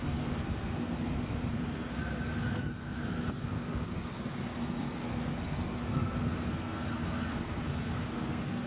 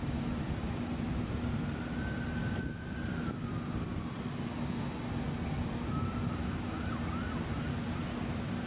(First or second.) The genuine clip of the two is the second